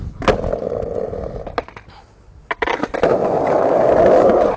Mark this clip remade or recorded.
recorded